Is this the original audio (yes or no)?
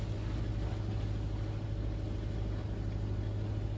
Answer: yes